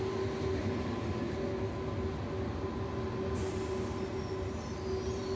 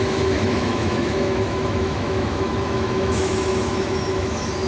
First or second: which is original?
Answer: first